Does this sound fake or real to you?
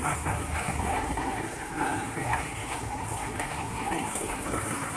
fake